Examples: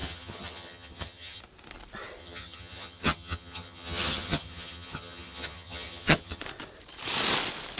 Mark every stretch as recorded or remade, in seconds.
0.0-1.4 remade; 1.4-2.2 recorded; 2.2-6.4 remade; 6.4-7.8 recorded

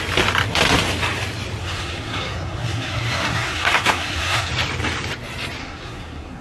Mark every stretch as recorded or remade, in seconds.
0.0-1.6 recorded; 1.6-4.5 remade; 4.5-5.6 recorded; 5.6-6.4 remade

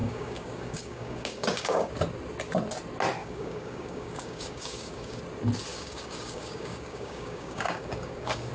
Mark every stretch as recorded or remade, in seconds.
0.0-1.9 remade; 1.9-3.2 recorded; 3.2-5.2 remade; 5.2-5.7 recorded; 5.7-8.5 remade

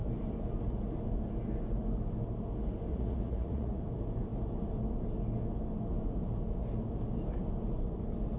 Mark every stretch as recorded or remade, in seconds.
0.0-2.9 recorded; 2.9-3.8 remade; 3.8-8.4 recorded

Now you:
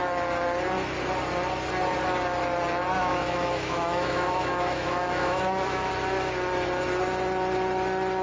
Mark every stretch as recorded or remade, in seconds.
0.0-3.0 recorded; 3.0-5.9 remade; 5.9-8.2 recorded

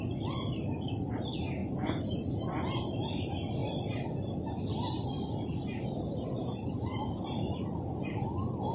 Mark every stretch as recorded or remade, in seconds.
0.0-1.6 recorded; 1.6-2.3 remade; 2.3-8.7 recorded

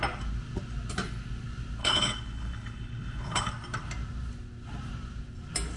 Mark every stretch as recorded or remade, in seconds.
0.0-1.8 recorded; 1.8-3.5 remade; 3.5-5.8 recorded